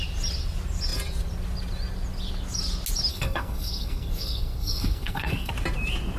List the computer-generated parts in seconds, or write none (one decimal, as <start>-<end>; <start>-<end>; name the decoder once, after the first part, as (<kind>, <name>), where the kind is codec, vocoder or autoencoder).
3.1-5.5 (codec, SNAC)